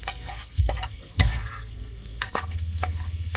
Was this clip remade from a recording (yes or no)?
yes